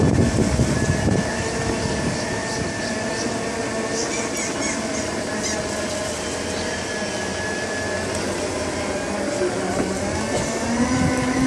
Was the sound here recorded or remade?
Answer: recorded